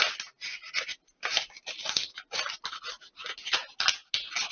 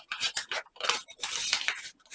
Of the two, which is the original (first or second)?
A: first